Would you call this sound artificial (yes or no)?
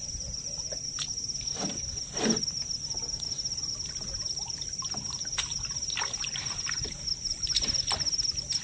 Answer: no